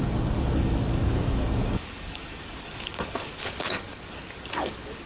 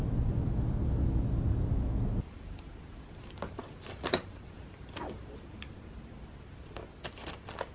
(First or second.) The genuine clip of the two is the second